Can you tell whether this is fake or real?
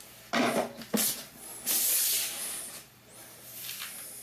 real